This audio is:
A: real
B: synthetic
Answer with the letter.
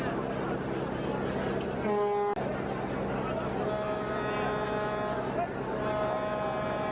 A